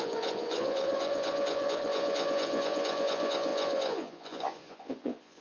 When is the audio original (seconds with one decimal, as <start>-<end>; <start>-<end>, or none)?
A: none